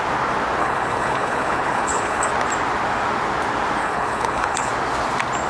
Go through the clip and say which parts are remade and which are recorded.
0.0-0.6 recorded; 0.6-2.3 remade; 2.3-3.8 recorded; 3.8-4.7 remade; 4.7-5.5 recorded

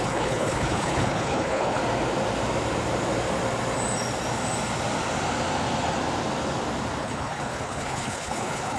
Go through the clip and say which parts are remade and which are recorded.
0.0-1.8 remade; 1.8-7.0 recorded; 7.0-8.8 remade

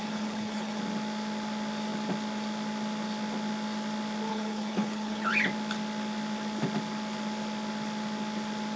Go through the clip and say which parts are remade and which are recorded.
0.0-0.8 remade; 0.8-4.3 recorded; 4.3-5.3 remade; 5.3-8.8 recorded

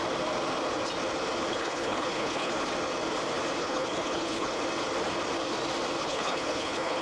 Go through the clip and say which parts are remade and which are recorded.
0.0-1.5 recorded; 1.5-2.5 remade; 2.5-3.6 recorded; 3.6-4.6 remade; 4.6-6.0 recorded; 6.0-7.0 remade

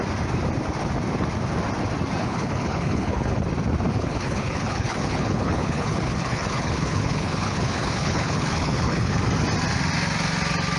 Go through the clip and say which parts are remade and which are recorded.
0.0-2.2 recorded; 2.2-3.4 remade; 3.4-3.9 recorded; 3.9-9.2 remade; 9.2-10.8 recorded